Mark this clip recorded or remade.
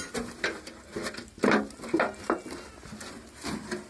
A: recorded